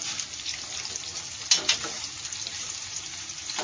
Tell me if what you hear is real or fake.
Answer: real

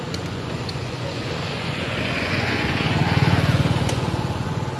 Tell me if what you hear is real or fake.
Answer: fake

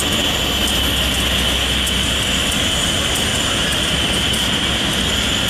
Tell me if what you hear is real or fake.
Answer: real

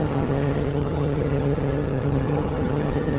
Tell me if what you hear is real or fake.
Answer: fake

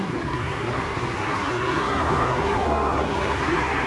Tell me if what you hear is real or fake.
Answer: fake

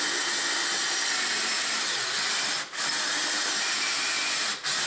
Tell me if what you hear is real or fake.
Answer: real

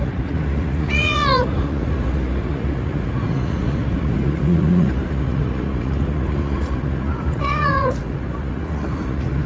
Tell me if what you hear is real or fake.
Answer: fake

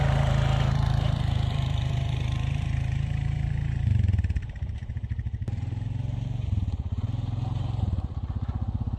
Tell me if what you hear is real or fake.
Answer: fake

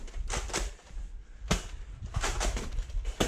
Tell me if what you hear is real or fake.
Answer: real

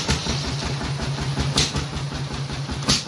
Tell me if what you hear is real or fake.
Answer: real